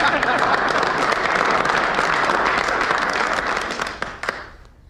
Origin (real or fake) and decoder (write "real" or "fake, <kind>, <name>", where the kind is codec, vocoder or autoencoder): real